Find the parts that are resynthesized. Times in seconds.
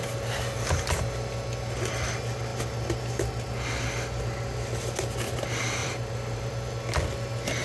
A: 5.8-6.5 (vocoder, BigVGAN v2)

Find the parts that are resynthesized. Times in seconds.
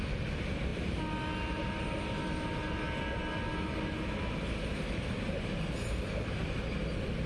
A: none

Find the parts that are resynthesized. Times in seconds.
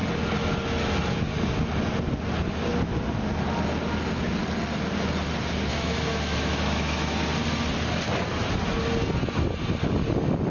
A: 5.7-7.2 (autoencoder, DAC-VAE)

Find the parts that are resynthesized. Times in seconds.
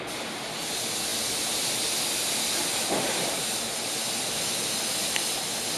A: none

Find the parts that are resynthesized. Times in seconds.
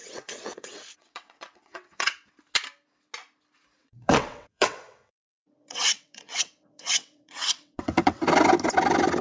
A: 0.0-2.3 (vocoder, WaveNeXt); 3.8-8.2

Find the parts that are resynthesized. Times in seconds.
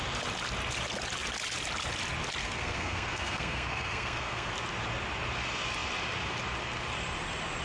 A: 2.4-4.5 (codec, SNAC)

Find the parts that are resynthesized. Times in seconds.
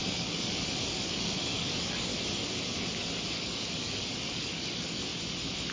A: 0.0-2.1 (codec, DAC); 3.3-5.1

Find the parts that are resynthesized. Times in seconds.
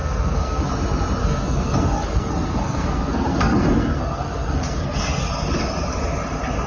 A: 0.0-0.7 (codec, SNAC); 1.2-5.2